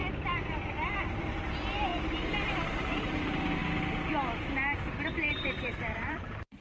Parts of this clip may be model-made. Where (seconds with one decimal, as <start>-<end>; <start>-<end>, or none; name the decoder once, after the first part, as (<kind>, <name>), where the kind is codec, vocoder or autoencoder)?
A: 1.0-3.6 (vocoder, BigVGAN v2); 5.3-6.6